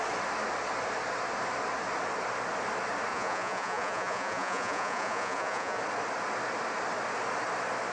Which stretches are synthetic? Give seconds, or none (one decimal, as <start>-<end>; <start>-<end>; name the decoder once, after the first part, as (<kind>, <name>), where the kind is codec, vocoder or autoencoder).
3.1-5.8 (vocoder, Vocos)